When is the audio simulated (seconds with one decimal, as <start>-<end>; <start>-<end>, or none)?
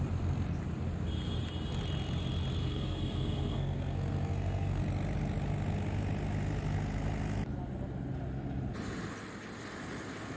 2.6-4.8